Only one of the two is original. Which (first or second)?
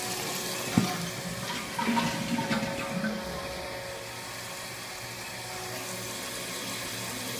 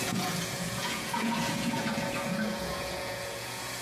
first